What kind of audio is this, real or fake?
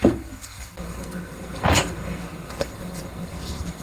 fake